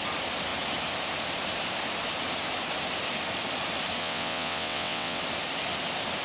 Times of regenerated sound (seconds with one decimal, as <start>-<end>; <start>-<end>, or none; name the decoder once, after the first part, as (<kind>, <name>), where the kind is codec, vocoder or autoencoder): 4.0-5.2 (vocoder, WaveNeXt)